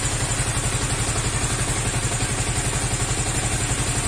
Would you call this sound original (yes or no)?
yes